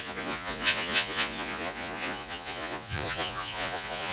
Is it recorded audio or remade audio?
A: remade